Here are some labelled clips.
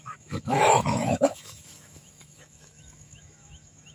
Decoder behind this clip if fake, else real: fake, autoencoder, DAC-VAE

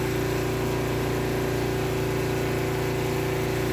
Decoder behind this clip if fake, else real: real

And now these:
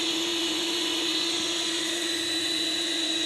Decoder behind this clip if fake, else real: fake, vocoder, Vocos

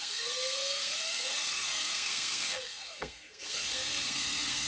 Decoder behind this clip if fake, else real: fake, codec, SNAC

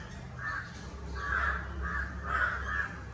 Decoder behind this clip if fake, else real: real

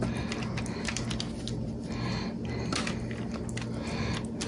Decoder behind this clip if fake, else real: real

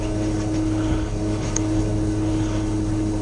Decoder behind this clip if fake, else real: fake, codec, HILCodec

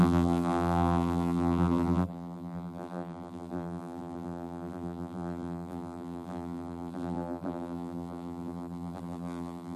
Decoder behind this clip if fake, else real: fake, vocoder, BigVGAN v2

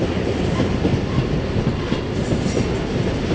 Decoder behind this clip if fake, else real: real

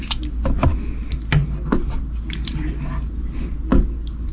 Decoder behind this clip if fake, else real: real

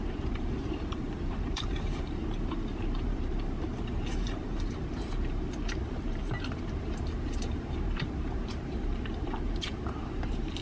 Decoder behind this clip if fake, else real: fake, vocoder, BigVGAN v2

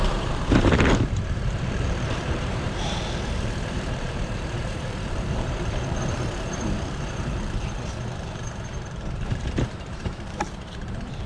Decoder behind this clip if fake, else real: fake, vocoder, BigVGAN v2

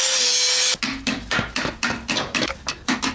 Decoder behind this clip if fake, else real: real